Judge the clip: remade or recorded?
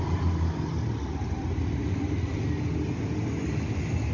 recorded